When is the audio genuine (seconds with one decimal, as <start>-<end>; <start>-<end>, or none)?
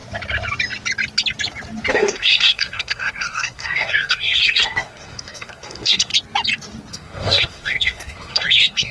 0.0-1.9; 6.1-6.9